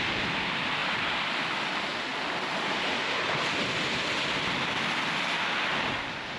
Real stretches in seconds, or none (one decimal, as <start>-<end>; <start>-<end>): 0.0-6.4